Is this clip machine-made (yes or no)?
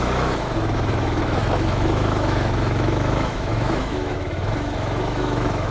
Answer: yes